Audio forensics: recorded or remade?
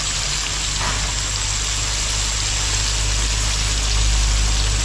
recorded